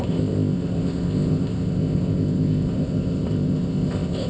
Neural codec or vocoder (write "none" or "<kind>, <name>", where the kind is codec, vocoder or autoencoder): codec, ZipCodec